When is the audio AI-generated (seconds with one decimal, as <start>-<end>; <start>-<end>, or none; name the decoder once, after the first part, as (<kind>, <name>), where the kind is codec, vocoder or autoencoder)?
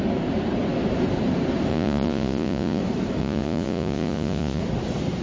1.7-2.8 (vocoder, Vocos); 3.2-4.6